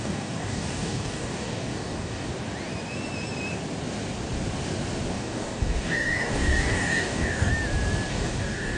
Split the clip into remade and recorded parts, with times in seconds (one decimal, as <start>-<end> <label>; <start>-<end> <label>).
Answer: 0.0-2.3 remade; 2.3-5.1 recorded; 5.1-7.5 remade; 7.5-8.1 recorded; 8.1-8.8 remade